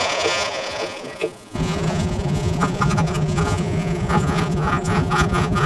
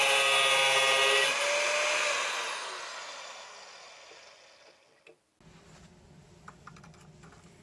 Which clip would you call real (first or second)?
second